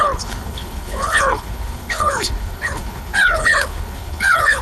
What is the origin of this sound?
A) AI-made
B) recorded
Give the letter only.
A